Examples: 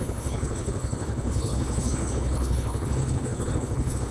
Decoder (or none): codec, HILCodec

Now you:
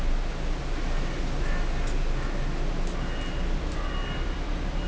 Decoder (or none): none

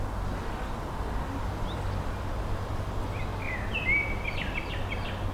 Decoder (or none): none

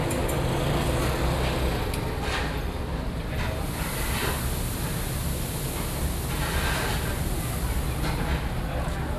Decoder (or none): none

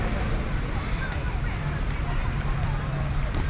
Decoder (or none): vocoder, BigVGAN v2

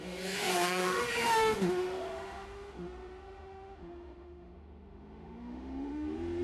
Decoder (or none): autoencoder, DAC-VAE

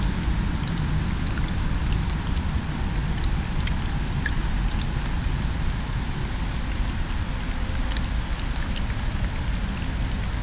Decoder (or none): none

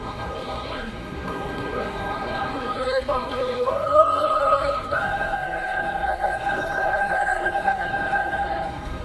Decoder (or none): codec, SNAC